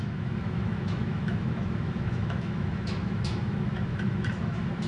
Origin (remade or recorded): remade